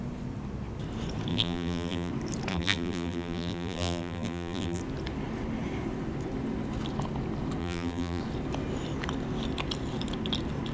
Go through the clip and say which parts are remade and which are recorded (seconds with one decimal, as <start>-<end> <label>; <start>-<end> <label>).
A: 0.0-1.3 recorded; 1.3-2.1 remade; 2.1-2.5 recorded; 2.5-4.8 remade; 4.8-7.6 recorded; 7.6-8.2 remade; 8.2-10.7 recorded